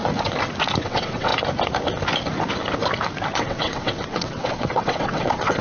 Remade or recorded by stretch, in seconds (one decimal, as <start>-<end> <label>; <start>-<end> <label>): 0.0-0.8 recorded; 0.8-1.3 remade; 1.3-3.4 recorded; 3.4-5.6 remade